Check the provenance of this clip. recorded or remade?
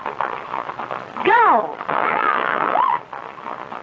remade